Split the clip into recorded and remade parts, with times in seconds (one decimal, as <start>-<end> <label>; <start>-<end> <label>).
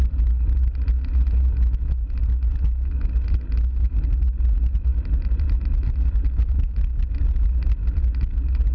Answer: 0.0-8.7 recorded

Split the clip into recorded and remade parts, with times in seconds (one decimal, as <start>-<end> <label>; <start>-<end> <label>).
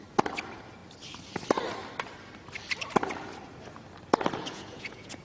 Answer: 0.0-4.4 recorded; 4.4-5.2 remade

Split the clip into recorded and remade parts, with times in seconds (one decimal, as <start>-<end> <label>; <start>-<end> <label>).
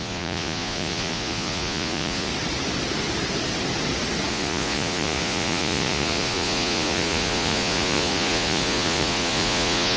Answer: 0.0-2.3 remade; 2.3-4.3 recorded; 4.3-10.0 remade